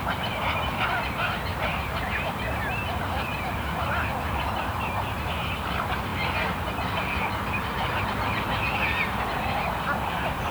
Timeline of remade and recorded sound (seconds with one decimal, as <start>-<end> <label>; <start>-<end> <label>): 0.0-1.5 recorded; 1.5-2.1 remade; 2.1-3.3 recorded; 3.3-4.0 remade; 4.0-10.5 recorded